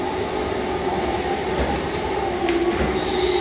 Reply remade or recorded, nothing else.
recorded